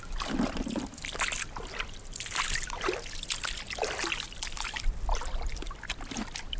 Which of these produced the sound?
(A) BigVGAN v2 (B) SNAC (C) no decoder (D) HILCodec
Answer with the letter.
C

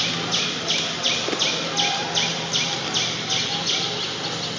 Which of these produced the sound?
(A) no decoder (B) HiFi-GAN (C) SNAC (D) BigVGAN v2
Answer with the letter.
A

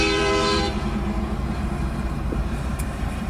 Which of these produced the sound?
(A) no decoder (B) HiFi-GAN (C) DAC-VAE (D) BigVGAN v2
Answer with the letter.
D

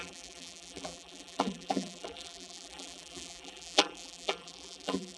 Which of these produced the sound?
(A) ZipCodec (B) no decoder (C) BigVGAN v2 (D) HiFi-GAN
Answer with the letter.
C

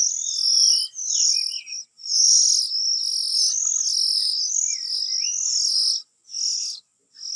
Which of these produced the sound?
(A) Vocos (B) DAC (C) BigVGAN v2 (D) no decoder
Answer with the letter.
D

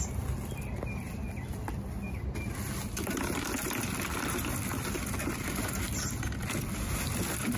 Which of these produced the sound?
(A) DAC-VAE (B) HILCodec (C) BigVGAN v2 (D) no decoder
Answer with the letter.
D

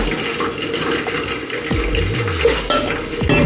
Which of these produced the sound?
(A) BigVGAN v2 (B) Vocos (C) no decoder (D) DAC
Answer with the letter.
C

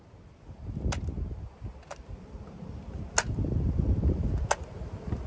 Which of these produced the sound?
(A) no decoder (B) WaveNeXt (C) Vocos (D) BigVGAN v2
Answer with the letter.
A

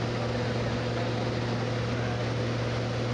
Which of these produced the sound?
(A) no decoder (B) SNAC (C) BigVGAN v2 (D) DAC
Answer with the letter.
A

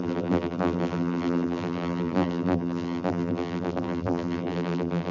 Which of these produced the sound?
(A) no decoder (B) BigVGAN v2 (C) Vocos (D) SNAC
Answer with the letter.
B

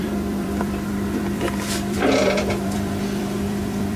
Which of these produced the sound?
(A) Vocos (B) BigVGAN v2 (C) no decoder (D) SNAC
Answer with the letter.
B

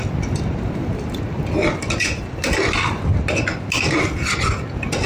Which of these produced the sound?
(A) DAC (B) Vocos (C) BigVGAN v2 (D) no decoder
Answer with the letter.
C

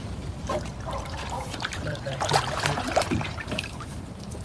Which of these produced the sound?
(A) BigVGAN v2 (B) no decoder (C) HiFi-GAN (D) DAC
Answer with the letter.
A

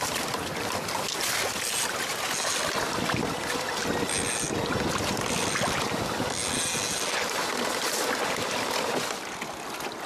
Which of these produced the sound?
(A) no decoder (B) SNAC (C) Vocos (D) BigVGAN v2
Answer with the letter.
A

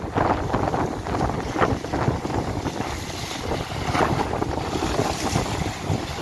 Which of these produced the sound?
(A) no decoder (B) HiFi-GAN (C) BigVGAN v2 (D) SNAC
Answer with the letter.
A